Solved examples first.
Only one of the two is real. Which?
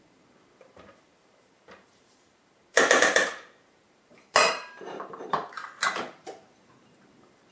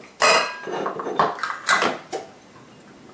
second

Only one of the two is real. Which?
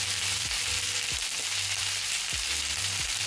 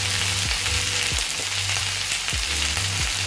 second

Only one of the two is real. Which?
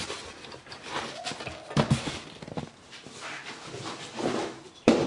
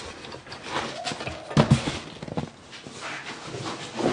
second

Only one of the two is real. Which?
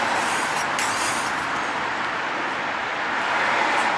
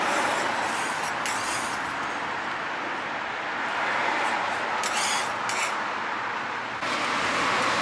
second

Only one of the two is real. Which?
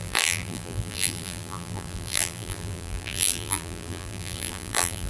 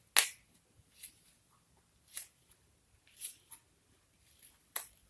second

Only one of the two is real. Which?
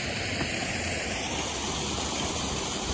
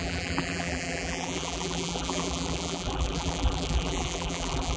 first